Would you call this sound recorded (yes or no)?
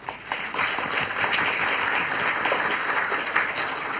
yes